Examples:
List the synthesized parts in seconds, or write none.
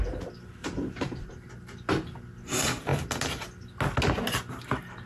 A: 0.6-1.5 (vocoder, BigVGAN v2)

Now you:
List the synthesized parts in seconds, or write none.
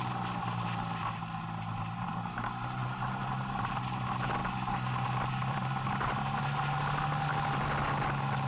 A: none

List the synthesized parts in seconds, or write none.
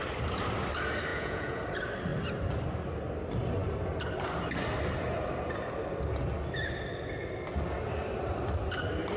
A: 1.1-1.6 (vocoder, Vocos)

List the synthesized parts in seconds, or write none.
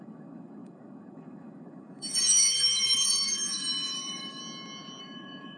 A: 0.0-4.4 (autoencoder, DAC-VAE); 5.0-5.6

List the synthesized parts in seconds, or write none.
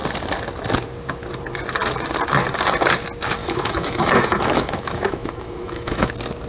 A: 3.4-6.1 (autoencoder, DAC-VAE)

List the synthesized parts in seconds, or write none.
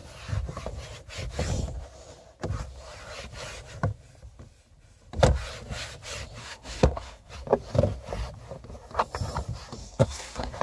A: 6.4-7.3 (codec, SNAC); 9.8-10.6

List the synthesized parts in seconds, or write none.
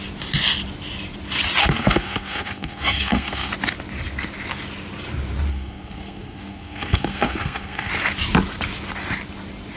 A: 1.6-3.5 (codec, SNAC); 5.5-7.9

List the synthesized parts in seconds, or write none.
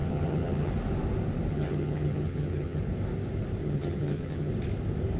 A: 0.0-0.7 (vocoder, HiFi-GAN); 1.5-2.8; 3.6-4.5